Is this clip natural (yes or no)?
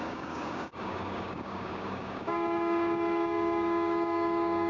no